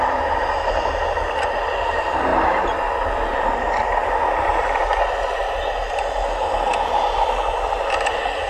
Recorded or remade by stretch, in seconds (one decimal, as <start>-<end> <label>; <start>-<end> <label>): 0.0-8.5 recorded